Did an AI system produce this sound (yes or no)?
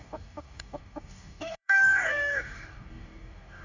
yes